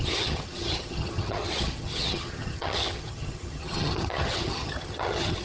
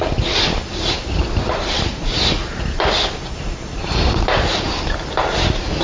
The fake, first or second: first